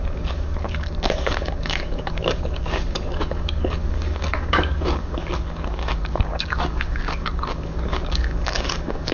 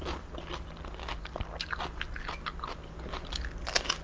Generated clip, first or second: first